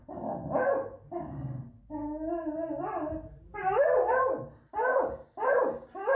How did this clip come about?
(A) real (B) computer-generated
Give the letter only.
A